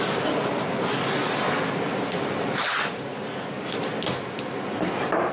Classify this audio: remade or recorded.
recorded